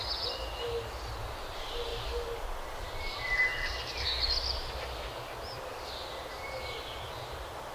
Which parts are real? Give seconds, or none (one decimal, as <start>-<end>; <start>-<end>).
0.0-7.7